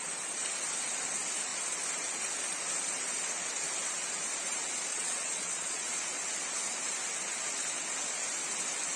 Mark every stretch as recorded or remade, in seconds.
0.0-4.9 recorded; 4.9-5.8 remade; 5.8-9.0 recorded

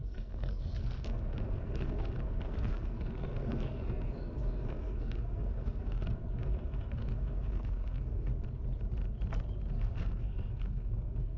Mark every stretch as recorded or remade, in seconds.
0.0-8.3 remade; 8.3-9.7 recorded; 9.7-11.4 remade

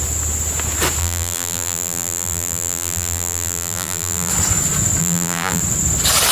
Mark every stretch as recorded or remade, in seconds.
0.0-1.0 recorded; 1.0-4.3 remade; 4.3-5.0 recorded; 5.0-5.6 remade; 5.6-6.3 recorded

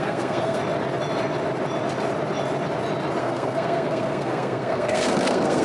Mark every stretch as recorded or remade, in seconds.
0.0-0.6 remade; 0.6-3.2 recorded; 3.2-5.6 remade

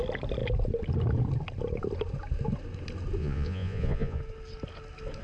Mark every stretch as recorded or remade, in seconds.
0.0-3.2 recorded; 3.2-4.2 remade; 4.2-5.2 recorded

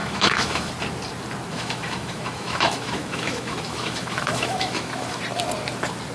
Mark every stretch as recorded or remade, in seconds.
0.0-0.7 remade; 0.7-1.5 recorded; 1.5-5.2 remade; 5.2-6.1 recorded

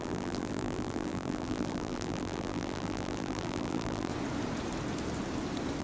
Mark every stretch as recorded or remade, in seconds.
0.0-4.1 remade; 4.1-5.8 recorded